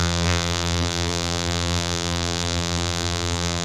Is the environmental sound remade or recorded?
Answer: remade